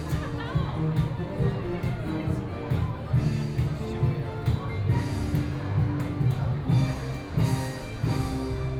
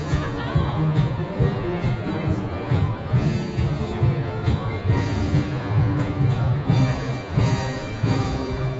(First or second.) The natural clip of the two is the first